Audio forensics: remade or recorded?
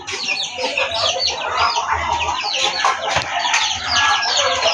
remade